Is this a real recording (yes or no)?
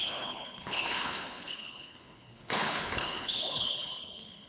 no